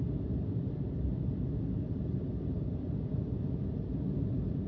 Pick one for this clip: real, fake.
real